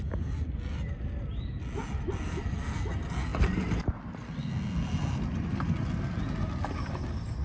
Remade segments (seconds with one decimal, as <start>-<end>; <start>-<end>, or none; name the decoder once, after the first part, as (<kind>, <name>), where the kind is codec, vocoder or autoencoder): none